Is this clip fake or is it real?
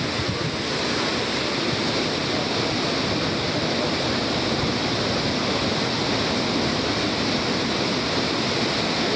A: real